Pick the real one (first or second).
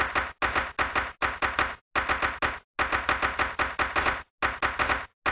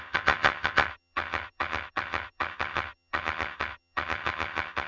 first